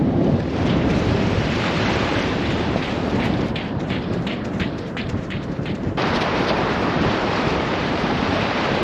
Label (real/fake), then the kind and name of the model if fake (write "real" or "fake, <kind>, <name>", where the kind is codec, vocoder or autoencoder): fake, vocoder, BigVGAN v2